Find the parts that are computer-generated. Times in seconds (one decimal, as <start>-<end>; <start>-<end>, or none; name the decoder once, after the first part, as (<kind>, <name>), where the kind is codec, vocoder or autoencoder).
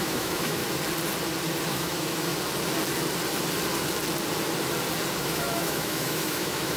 0.0-0.6 (autoencoder, DAC-VAE); 1.7-2.3; 5.2-6.8